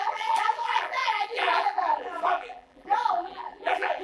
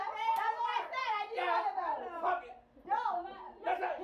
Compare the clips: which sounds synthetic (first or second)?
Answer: first